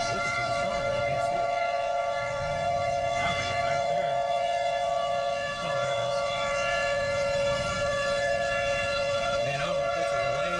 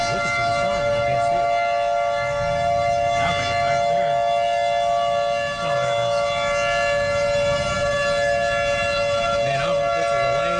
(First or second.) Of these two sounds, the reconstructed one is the first